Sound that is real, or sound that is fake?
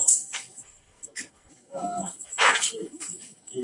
fake